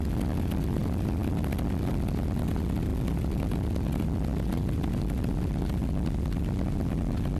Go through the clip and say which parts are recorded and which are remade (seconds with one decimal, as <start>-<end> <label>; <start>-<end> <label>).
0.0-7.4 recorded